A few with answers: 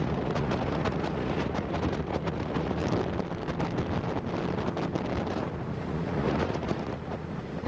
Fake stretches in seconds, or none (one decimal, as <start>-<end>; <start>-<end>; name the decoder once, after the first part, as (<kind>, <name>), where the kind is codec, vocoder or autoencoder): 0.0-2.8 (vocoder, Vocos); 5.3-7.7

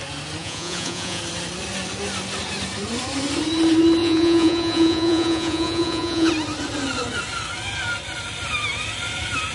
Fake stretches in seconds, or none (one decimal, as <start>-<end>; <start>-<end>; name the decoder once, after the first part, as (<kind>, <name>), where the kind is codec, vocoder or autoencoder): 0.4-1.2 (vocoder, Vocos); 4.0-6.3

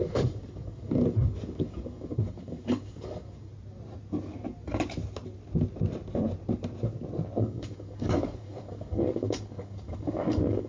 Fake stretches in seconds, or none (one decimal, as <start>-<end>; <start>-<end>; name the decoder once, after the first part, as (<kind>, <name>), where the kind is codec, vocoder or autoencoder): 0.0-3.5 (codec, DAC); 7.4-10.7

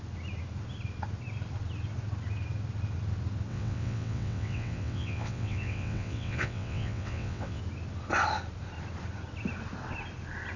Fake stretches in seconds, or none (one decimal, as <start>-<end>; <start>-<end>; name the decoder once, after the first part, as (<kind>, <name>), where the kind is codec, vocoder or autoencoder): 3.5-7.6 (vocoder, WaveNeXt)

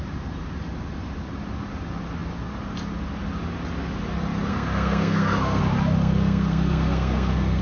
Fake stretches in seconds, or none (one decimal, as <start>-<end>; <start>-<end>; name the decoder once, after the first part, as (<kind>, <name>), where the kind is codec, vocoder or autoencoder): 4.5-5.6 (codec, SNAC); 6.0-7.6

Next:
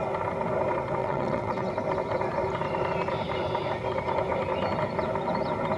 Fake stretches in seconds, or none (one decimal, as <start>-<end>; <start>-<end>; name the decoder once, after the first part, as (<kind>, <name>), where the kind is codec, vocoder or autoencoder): 1.0-1.7 (vocoder, WaveNeXt)